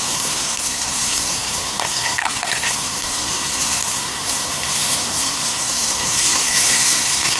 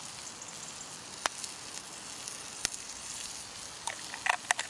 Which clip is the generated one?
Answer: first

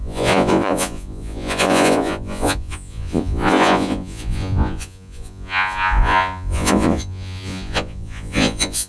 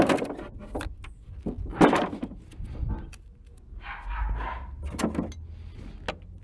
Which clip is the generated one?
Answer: first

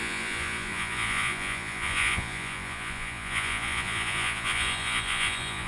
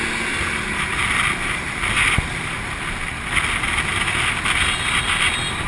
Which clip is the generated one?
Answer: first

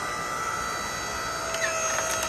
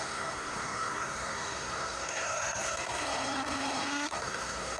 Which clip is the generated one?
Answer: second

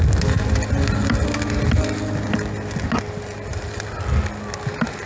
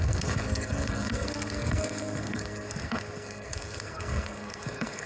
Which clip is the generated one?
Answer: second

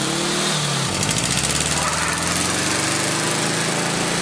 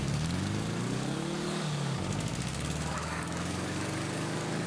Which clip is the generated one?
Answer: second